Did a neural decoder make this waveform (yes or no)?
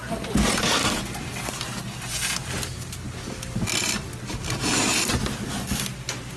no